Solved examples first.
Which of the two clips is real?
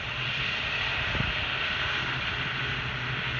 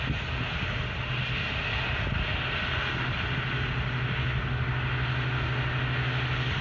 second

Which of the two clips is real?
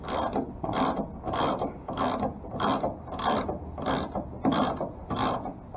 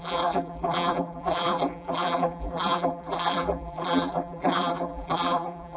first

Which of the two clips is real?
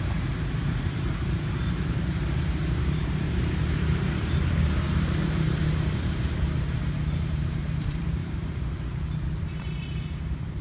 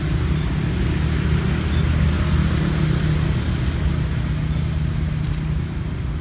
second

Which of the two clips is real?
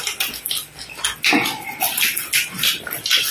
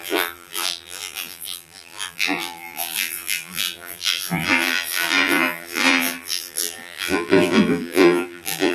first